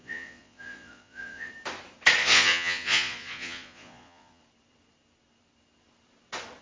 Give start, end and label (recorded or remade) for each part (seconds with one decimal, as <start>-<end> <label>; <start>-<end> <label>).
0.0-1.5 remade; 1.5-2.2 recorded; 2.2-4.4 remade; 4.4-6.6 recorded